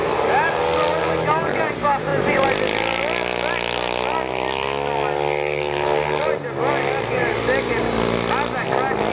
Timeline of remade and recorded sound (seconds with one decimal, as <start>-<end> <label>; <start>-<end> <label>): 0.0-9.1 recorded